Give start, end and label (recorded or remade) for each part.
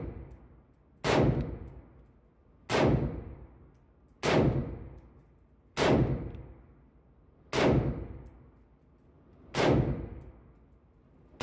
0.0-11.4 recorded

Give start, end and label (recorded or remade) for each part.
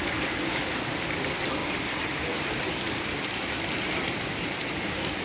0.0-1.6 recorded; 1.6-4.7 remade; 4.7-5.2 recorded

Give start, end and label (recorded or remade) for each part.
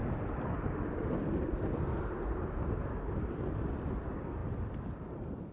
0.0-2.4 recorded; 2.4-5.5 remade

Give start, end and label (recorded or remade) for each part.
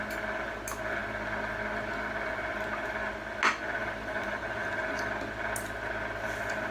0.0-3.8 recorded; 3.8-5.1 remade; 5.1-6.7 recorded